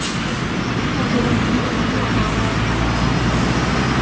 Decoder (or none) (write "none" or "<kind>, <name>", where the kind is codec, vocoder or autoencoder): none